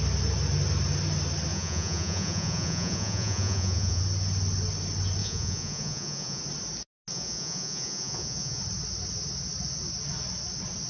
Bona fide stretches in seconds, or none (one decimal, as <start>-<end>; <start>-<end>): 0.0-1.5; 4.0-5.2; 6.4-7.1; 8.6-10.9